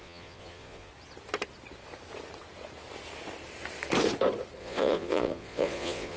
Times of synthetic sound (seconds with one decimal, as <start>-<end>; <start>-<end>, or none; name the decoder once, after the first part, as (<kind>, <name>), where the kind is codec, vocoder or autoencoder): 0.0-0.9 (vocoder, Vocos); 4.6-6.2